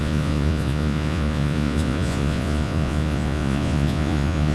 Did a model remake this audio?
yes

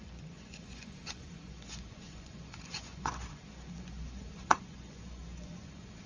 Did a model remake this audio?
yes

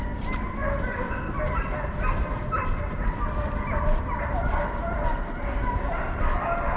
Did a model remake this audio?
no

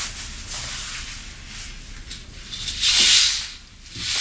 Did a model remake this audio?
no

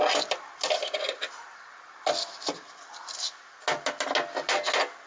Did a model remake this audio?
no